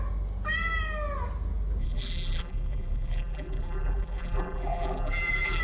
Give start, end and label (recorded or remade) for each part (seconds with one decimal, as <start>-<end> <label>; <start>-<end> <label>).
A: 0.0-1.8 recorded; 1.8-5.6 remade